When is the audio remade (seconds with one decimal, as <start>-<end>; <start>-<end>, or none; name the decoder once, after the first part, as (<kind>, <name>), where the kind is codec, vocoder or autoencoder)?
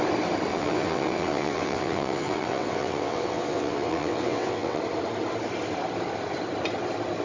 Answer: 0.5-4.8 (vocoder, WaveNeXt)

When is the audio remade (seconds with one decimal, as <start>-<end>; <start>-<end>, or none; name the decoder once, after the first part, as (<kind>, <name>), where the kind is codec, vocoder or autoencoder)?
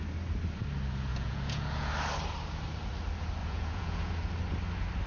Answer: 1.1-1.9 (vocoder, Vocos); 3.4-4.1